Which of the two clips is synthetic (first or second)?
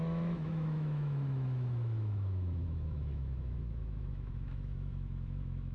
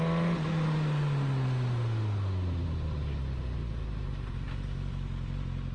first